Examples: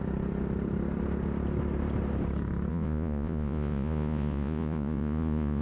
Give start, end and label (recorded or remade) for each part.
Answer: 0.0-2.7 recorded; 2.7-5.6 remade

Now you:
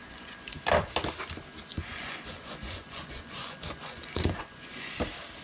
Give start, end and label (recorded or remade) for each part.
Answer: 0.0-0.6 remade; 0.6-1.7 recorded; 1.7-4.9 remade; 4.9-5.4 recorded

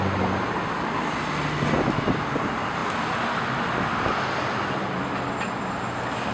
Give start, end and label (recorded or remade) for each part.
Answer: 0.0-6.3 recorded

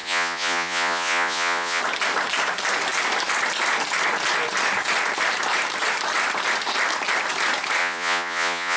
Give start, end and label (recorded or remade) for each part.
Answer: 0.0-1.8 remade; 1.8-7.8 recorded; 7.8-8.8 remade

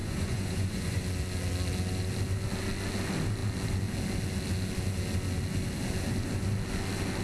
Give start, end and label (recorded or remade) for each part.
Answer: 0.0-1.0 remade; 1.0-7.2 recorded

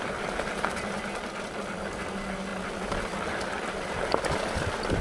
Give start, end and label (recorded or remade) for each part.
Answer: 0.0-5.0 recorded

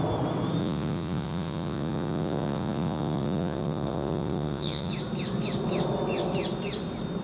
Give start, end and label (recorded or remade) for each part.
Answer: 0.0-0.6 recorded; 0.6-4.9 remade; 4.9-7.2 recorded